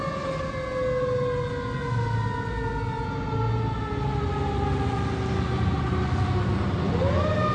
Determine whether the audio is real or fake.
real